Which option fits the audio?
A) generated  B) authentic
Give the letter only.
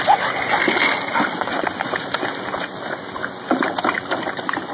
B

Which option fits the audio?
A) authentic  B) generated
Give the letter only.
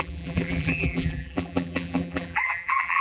B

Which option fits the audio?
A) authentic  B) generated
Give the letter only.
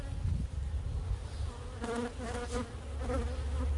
A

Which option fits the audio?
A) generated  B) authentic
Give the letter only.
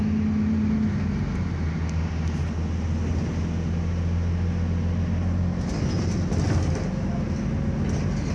B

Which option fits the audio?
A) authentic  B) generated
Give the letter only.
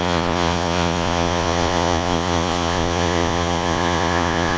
B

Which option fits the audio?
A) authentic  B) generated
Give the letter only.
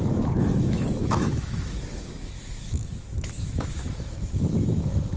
B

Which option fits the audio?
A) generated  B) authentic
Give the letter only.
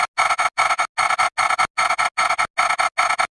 B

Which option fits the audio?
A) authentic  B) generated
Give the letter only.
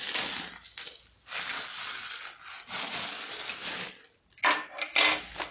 A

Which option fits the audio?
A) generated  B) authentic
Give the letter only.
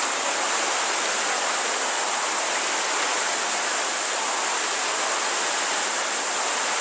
A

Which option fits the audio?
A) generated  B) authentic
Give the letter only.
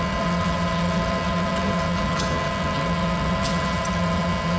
A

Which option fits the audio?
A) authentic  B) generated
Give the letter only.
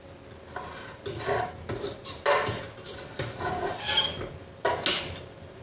A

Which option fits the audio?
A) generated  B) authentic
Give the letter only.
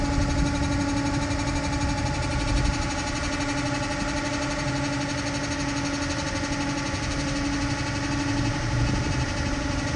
B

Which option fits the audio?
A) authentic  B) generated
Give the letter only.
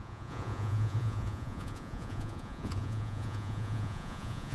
B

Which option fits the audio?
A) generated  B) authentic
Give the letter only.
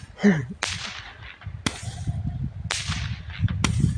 B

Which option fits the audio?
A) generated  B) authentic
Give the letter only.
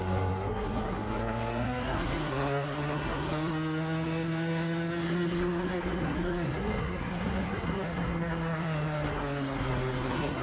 A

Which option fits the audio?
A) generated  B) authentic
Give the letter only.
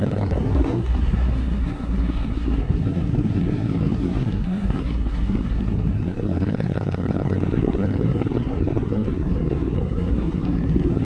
A